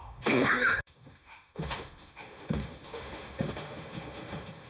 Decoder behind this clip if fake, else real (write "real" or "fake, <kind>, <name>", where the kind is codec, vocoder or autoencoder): fake, autoencoder, DAC-VAE